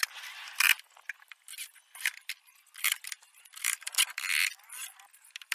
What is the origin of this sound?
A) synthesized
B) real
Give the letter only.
B